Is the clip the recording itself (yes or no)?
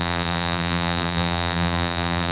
no